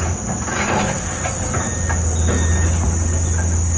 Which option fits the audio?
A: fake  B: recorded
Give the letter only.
B